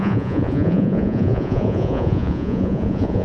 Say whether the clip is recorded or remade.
remade